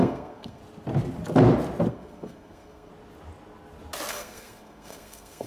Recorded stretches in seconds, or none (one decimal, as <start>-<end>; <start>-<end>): 0.6-1.9; 2.9-4.1